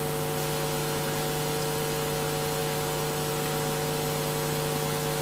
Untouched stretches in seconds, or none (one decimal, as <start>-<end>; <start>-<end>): 0.0-5.2